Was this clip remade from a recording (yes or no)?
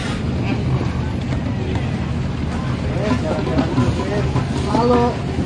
no